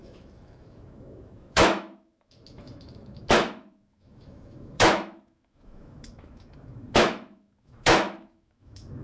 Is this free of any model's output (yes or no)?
no